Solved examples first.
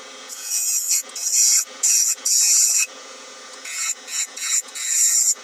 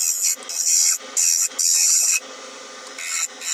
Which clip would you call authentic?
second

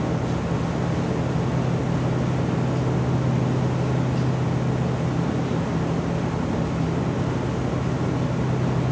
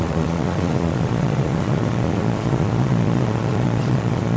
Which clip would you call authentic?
first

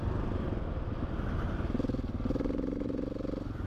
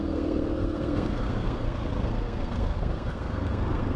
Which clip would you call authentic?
first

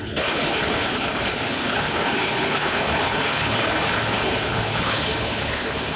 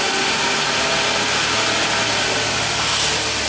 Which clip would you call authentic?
second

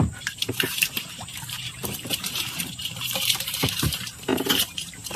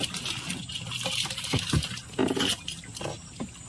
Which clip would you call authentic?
second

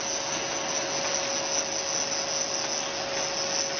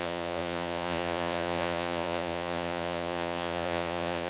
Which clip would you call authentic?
first